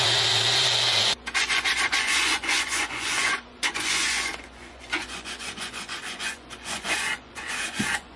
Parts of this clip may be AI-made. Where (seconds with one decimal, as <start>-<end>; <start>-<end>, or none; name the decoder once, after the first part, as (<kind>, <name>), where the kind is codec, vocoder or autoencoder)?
0.0-8.2 (vocoder, Vocos)